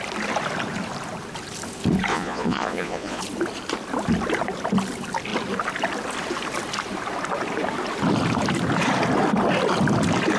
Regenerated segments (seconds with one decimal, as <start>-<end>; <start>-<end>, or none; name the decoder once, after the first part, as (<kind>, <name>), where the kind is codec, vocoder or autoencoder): 2.1-3.2 (vocoder, Vocos)